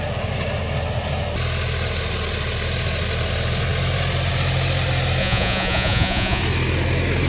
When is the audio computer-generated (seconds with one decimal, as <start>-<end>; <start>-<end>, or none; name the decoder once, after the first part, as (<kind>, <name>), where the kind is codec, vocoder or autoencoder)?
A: 5.2-6.4 (vocoder, Vocos)